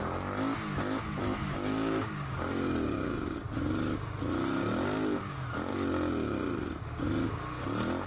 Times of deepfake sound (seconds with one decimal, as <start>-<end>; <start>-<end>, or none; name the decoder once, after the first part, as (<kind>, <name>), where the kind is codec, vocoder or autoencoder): 1.4-3.4 (codec, DAC)